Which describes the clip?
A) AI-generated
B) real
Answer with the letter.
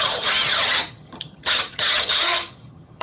A